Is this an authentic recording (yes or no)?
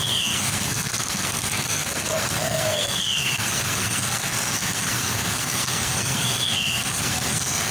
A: no